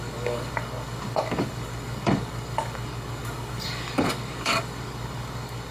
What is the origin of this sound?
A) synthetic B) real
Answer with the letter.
A